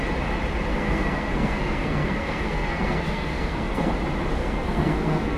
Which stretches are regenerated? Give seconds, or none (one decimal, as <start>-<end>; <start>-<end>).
0.7-3.9; 4.4-5.4